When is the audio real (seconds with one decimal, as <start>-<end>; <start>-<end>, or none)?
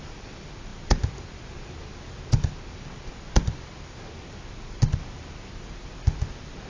6.0-6.7